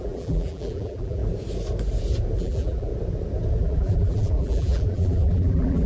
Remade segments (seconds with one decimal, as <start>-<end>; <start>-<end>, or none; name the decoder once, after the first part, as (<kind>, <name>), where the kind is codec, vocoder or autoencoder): 0.0-1.2 (vocoder, BigVGAN v2); 2.4-2.9; 3.6-5.9